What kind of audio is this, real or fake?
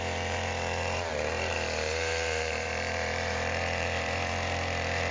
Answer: fake